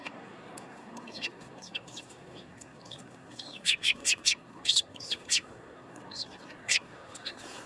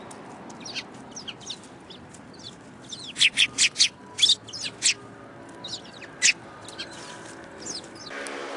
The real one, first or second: second